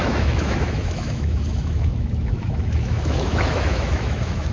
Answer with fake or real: fake